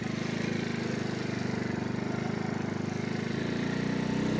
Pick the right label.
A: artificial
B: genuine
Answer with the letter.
B